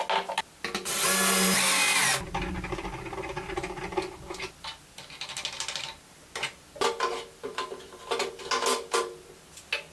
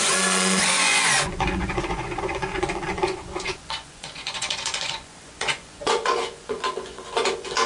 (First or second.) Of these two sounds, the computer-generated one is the second